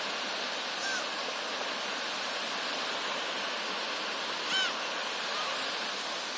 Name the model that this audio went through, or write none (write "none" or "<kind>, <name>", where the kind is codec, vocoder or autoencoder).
none